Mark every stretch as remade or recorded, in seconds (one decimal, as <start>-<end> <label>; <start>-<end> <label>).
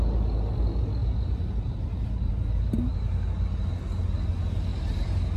0.0-1.0 recorded; 1.0-2.3 remade; 2.3-4.7 recorded; 4.7-5.4 remade